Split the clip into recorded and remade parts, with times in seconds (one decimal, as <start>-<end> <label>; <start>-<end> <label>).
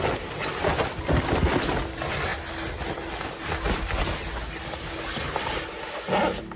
0.0-6.6 recorded